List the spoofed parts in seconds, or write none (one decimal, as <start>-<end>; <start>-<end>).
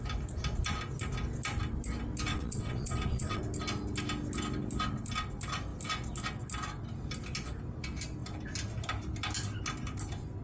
2.3-3.4